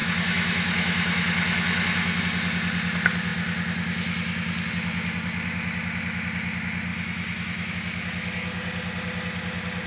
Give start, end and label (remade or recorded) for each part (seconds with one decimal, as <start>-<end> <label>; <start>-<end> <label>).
0.0-2.2 remade; 2.2-6.9 recorded; 6.9-7.7 remade; 7.7-9.9 recorded